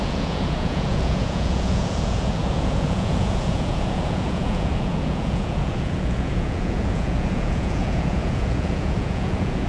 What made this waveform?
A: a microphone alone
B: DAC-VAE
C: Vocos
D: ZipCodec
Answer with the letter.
C